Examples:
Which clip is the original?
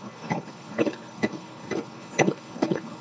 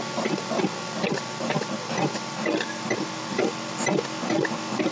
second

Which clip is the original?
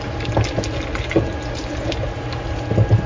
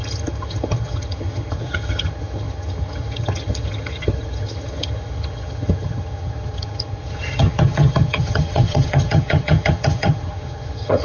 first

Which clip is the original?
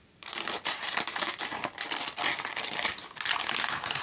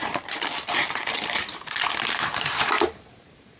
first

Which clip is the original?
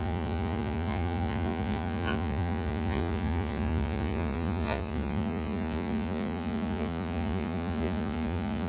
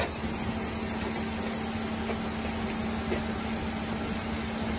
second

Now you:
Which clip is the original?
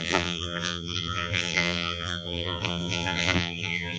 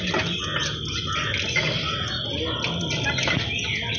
second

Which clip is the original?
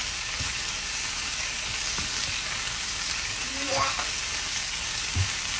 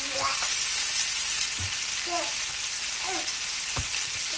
second